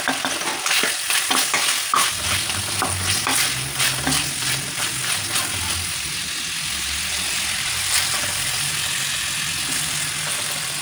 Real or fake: real